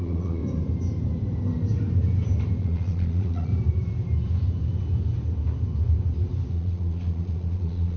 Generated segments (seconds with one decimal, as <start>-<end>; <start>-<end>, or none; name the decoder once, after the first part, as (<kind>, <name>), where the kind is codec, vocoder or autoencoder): 0.0-0.4 (vocoder, Vocos); 2.6-3.5; 6.5-8.0